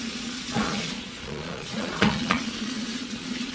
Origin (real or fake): fake